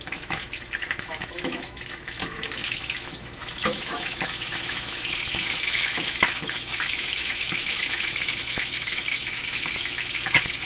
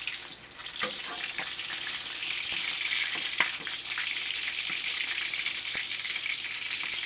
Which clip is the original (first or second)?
second